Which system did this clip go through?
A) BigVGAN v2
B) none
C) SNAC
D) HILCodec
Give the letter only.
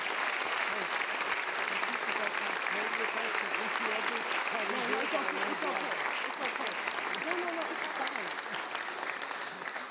B